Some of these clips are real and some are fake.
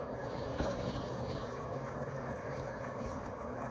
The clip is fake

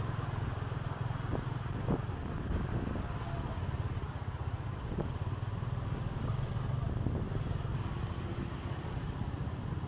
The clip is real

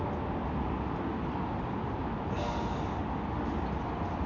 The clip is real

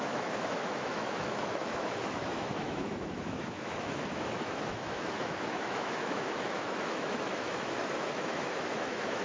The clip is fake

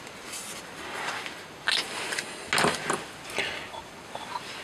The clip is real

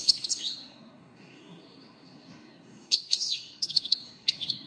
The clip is fake